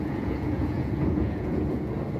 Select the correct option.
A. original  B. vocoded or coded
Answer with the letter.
B